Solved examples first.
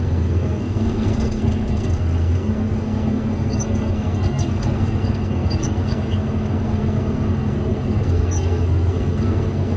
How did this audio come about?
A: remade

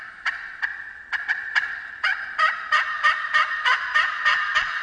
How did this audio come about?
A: remade